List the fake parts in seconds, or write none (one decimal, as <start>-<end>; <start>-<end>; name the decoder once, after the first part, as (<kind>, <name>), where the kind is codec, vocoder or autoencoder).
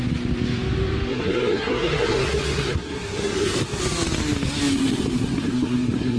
1.1-3.8 (codec, SNAC); 4.7-6.2